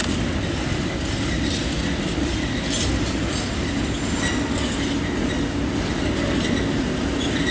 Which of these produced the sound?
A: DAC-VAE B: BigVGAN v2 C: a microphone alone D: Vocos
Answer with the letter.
C